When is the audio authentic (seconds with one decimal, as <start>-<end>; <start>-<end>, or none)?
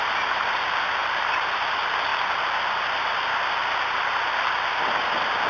0.0-1.0; 1.7-5.5